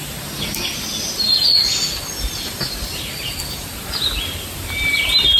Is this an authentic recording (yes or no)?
yes